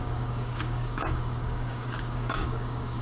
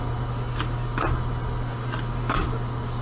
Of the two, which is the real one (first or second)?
second